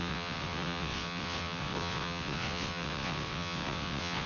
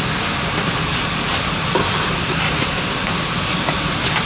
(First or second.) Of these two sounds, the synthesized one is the first